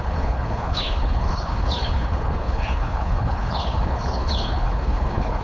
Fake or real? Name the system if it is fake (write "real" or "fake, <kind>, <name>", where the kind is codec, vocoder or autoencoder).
fake, codec, HILCodec